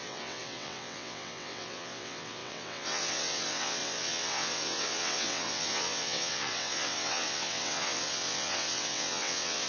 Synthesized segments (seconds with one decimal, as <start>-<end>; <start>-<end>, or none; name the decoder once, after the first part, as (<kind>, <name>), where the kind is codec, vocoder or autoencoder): 0.0-9.7 (vocoder, WaveNeXt)

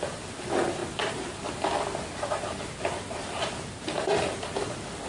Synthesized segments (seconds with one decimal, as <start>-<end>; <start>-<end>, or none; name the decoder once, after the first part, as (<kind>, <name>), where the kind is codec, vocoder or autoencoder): none

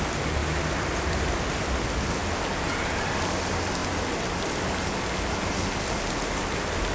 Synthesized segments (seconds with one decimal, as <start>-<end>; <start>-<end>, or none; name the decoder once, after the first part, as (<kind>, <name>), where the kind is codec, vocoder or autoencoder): none